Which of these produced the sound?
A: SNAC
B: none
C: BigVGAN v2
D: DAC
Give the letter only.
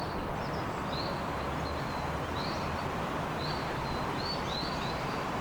B